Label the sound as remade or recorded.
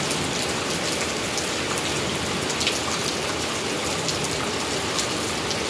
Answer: recorded